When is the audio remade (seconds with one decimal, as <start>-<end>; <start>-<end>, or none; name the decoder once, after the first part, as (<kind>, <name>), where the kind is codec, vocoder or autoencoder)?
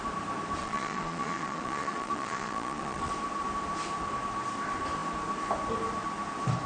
0.6-3.1 (vocoder, Vocos)